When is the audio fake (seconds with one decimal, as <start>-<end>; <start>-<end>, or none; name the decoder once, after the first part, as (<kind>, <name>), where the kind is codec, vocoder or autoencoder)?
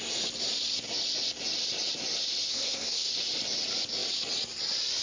2.5-3.1 (codec, SNAC)